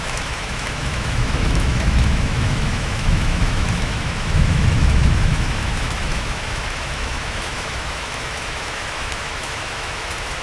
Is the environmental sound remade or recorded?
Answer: remade